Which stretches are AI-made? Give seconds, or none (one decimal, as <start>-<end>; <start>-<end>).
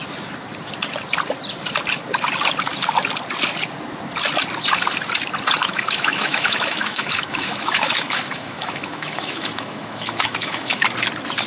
5.6-10.8